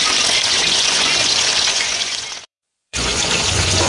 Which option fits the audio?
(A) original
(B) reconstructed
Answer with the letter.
B